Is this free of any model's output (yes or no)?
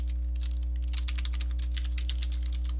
yes